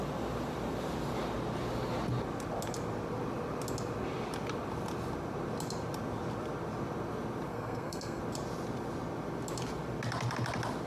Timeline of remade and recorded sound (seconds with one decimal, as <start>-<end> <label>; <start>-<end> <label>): 0.0-7.5 recorded; 7.5-8.2 remade; 8.2-10.9 recorded